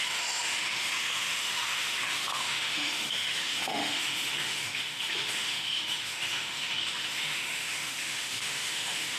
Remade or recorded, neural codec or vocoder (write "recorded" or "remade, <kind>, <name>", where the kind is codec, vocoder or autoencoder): remade, autoencoder, DAC-VAE